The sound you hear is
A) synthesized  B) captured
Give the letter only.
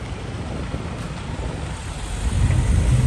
B